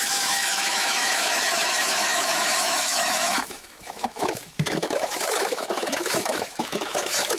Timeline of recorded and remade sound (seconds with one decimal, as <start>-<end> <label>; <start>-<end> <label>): 0.0-7.4 remade